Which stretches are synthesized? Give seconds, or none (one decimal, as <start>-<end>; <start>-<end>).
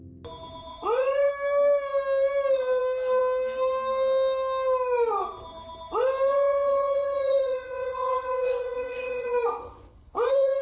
0.7-1.3; 6.3-10.6